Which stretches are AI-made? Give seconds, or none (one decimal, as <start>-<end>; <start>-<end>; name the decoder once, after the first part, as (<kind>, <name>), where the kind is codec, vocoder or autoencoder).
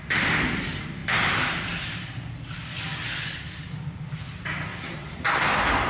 1.0-2.3 (vocoder, BigVGAN v2); 4.7-5.9